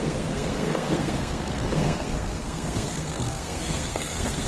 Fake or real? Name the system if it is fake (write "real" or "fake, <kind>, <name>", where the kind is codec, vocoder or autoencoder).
fake, codec, SNAC